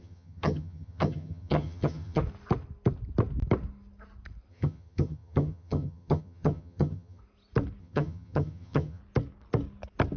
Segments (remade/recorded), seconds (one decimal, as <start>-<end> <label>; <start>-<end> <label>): 0.0-2.2 remade; 2.2-4.5 recorded; 4.5-7.2 remade; 7.2-7.8 recorded; 7.8-9.0 remade; 9.0-10.2 recorded